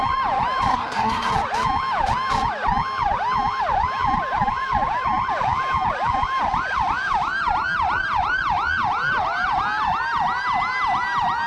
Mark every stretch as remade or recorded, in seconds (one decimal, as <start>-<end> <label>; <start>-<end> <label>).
0.0-0.7 recorded; 0.7-1.3 remade; 1.3-11.5 recorded